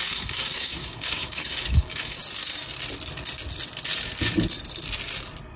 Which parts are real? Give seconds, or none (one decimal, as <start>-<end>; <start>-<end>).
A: 2.2-5.6

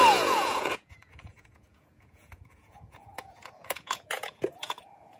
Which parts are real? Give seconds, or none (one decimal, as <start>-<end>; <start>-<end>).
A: none

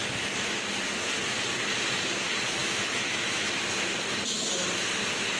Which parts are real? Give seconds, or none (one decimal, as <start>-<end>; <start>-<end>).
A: 0.0-2.6; 3.5-5.4